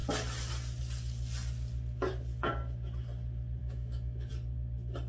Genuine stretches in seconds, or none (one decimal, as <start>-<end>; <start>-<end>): 0.0-3.6; 4.3-5.1